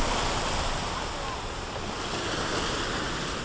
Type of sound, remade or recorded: recorded